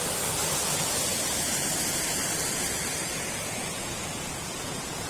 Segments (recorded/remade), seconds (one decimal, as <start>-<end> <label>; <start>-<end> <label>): 0.0-3.0 recorded; 3.0-5.1 remade